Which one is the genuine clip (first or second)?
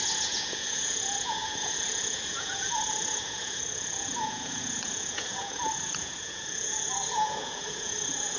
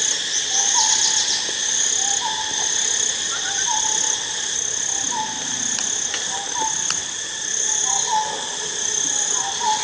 second